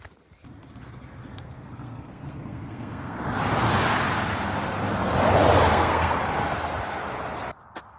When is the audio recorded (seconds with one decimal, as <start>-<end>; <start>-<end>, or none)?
0.0-1.3; 3.2-5.7; 6.2-8.0